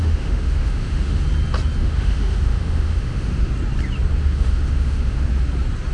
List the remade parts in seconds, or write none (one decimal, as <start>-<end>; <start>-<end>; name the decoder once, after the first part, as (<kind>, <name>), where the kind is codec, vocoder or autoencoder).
0.0-1.2 (autoencoder, DAC-VAE); 1.8-3.5; 4.2-5.3